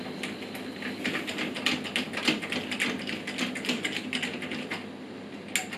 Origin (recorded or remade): recorded